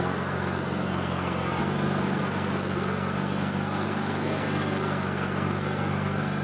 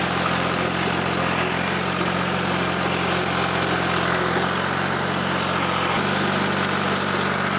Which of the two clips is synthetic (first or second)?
first